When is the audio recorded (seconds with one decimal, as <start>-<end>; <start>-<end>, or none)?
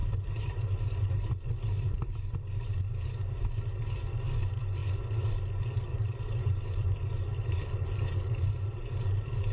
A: 1.1-5.9